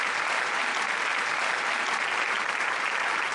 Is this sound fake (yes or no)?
no